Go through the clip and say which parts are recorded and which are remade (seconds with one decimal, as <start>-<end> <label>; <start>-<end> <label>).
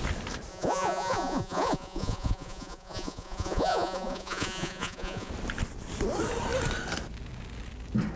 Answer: 0.0-0.5 recorded; 0.5-5.3 remade; 5.3-8.2 recorded